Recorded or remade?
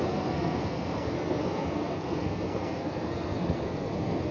remade